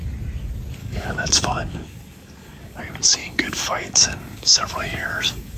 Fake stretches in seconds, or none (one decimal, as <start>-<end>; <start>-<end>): 0.8-2.8; 3.2-5.6